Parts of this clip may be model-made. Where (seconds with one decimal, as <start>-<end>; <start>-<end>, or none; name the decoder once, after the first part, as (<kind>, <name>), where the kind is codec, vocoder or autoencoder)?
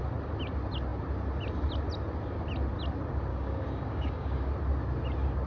3.3-4.5 (codec, DAC)